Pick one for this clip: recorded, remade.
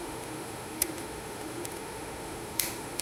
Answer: remade